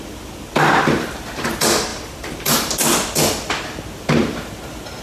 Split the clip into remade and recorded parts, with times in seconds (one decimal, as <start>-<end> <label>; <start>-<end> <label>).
0.0-5.0 recorded